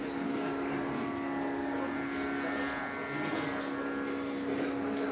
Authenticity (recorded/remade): recorded